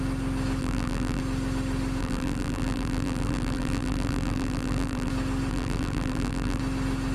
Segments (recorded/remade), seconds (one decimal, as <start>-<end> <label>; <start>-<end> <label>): 0.0-0.6 recorded; 0.6-1.2 remade; 1.2-2.0 recorded; 2.0-5.1 remade; 5.1-5.5 recorded; 5.5-6.6 remade; 6.6-7.1 recorded